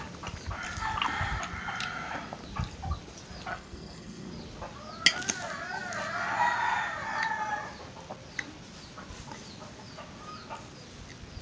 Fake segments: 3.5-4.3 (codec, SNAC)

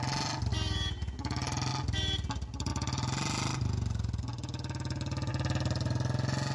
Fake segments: none

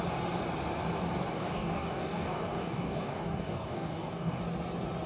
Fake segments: 1.3-4.4 (codec, DAC)